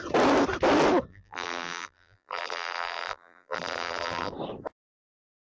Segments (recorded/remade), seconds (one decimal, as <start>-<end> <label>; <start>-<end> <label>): 0.0-1.1 recorded; 1.1-4.3 remade; 4.3-5.6 recorded